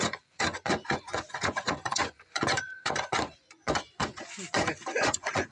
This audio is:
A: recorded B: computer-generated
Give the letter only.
B